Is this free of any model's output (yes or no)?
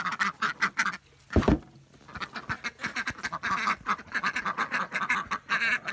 yes